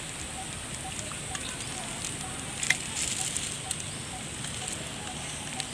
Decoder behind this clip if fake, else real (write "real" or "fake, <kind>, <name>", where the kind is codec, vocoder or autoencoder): real